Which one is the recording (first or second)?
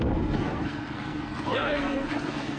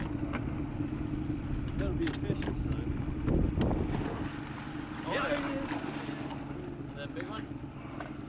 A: second